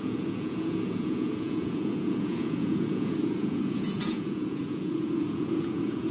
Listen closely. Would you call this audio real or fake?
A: fake